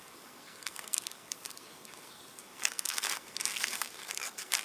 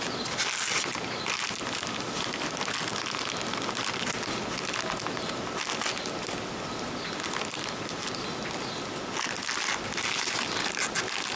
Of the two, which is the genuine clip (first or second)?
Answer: second